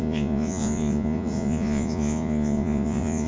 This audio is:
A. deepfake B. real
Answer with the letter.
A